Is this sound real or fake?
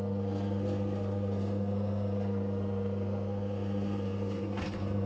fake